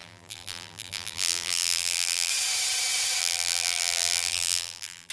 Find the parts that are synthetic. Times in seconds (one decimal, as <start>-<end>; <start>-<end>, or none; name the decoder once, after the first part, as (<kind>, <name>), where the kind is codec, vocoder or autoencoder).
0.0-2.3 (vocoder, BigVGAN v2); 3.2-5.1